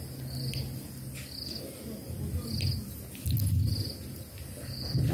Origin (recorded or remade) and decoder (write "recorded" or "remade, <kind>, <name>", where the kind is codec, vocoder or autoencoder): recorded